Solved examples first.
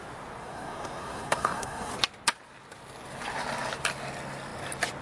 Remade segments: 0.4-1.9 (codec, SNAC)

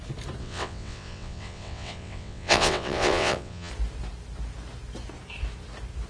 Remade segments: 0.4-3.7 (vocoder, WaveNeXt)

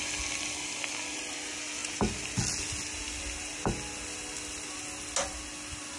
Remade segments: none

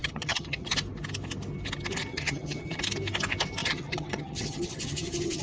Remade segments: 0.0-0.7 (vocoder, HiFi-GAN); 2.1-2.8; 3.6-5.4

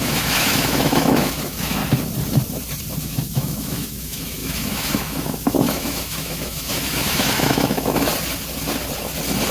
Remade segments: 0.0-1.8 (autoencoder, DAC-VAE); 3.0-8.1

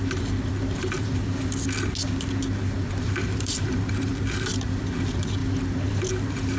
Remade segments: 0.0-1.2 (vocoder, BigVGAN v2); 2.9-5.4; 6.1-6.6

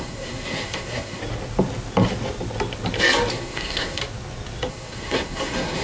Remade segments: 0.0-1.2 (codec, SNAC); 3.3-4.0; 4.7-5.8

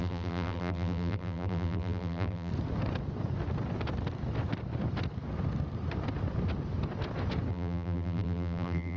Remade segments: 0.0-2.5 (vocoder, BigVGAN v2); 7.5-9.0